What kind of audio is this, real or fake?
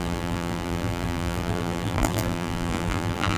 fake